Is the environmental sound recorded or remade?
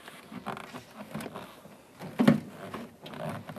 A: recorded